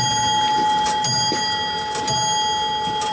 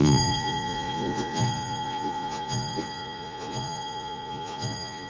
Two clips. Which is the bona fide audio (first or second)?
first